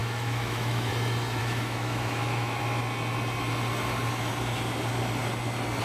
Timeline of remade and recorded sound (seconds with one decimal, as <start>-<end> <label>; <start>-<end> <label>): 0.0-0.9 remade; 0.9-1.4 recorded; 1.4-2.6 remade; 2.6-5.8 recorded